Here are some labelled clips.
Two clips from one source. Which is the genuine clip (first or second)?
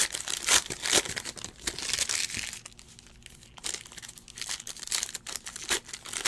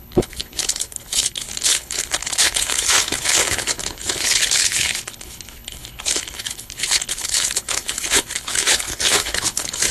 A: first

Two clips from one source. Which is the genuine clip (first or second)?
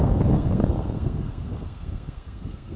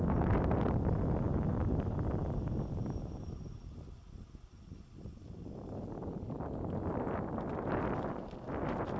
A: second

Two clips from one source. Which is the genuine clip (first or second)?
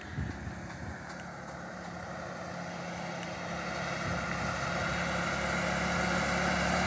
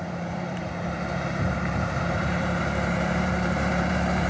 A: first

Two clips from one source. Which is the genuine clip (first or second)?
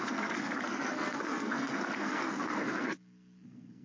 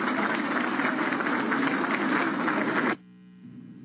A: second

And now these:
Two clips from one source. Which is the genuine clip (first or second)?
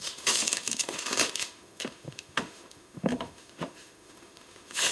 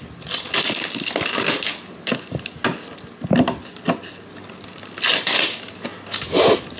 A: second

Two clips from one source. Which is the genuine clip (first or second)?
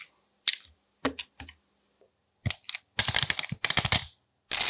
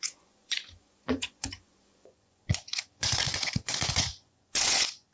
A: first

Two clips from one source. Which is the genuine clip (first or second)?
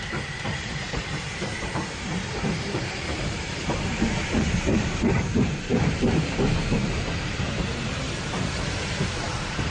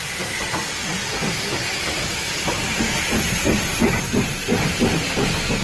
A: second